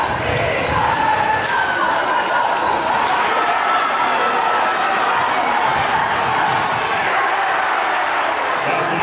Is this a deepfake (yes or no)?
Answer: no